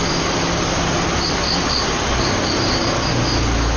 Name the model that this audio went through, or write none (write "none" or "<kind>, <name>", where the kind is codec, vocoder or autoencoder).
none